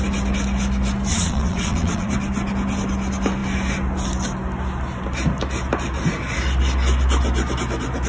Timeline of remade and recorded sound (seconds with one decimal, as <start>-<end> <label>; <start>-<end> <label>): 0.0-1.1 recorded; 1.1-2.1 remade; 2.1-8.1 recorded